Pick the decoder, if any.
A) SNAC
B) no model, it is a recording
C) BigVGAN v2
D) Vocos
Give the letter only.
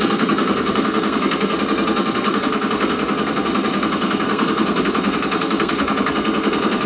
A